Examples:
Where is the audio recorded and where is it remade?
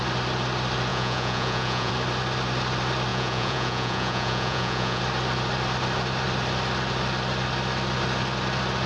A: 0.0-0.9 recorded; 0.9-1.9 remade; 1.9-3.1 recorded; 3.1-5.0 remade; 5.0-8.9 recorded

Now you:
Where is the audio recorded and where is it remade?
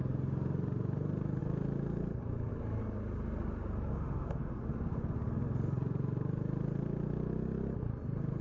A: 0.0-3.9 recorded; 3.9-4.6 remade; 4.6-8.4 recorded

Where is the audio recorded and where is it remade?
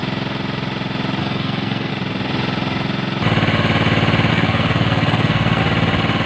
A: 0.0-1.2 recorded; 1.2-1.9 remade; 1.9-4.3 recorded; 4.3-5.6 remade; 5.6-6.3 recorded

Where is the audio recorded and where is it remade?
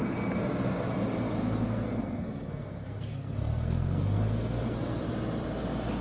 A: 0.0-1.4 recorded; 1.4-5.0 remade; 5.0-6.0 recorded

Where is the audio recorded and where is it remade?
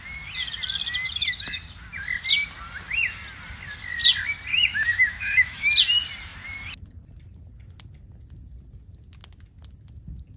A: 0.0-4.5 recorded; 4.5-5.7 remade; 5.7-10.4 recorded